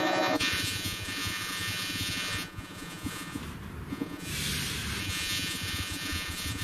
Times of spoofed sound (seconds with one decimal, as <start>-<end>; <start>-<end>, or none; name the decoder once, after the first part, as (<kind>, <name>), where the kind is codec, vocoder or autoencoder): 0.0-3.4 (vocoder, Vocos); 3.9-4.3; 5.0-6.6